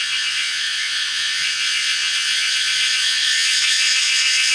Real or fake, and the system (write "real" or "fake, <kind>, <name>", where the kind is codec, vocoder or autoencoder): fake, vocoder, Vocos